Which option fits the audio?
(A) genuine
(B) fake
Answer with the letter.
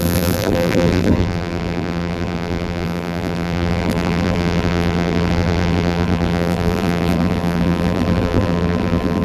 B